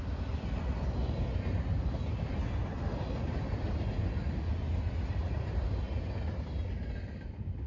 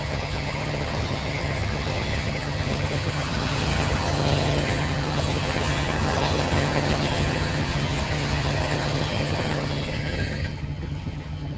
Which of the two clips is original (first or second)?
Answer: first